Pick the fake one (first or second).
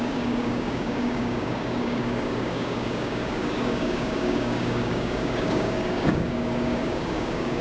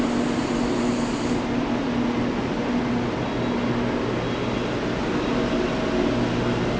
first